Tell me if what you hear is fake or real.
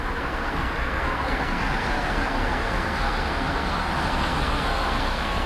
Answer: fake